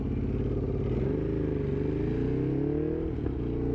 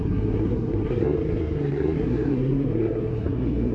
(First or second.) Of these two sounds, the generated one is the second